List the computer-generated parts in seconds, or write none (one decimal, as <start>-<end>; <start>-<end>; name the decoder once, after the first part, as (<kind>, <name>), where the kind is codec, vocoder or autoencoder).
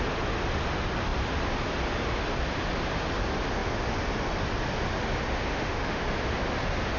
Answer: 5.5-6.0 (autoencoder, DAC-VAE)